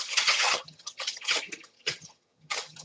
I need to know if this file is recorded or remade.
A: remade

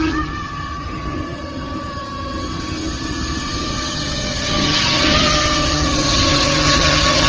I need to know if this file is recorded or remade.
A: remade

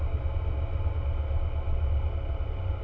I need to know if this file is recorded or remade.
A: recorded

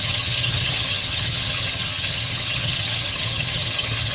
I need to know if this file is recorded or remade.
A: remade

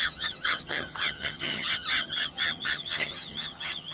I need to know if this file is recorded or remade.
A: remade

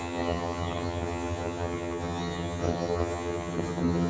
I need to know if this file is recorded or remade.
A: remade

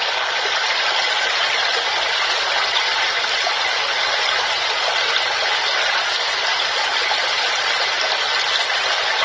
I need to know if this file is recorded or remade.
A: recorded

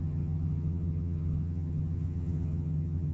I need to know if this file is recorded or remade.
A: remade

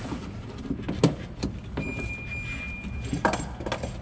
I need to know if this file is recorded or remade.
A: recorded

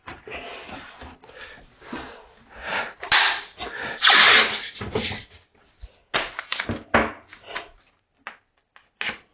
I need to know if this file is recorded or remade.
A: recorded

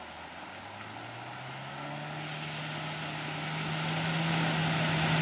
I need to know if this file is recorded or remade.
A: recorded